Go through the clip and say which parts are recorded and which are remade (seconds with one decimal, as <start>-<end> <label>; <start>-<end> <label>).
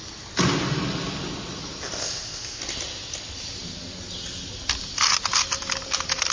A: 0.0-2.0 recorded; 2.0-2.6 remade; 2.6-6.3 recorded